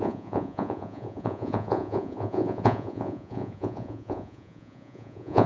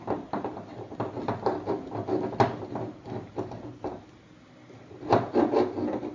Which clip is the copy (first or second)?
first